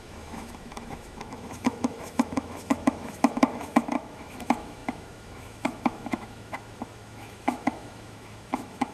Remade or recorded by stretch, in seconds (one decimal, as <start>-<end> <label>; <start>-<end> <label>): 0.0-8.9 remade